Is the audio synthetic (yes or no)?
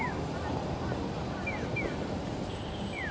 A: no